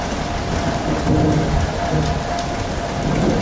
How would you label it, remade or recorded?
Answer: recorded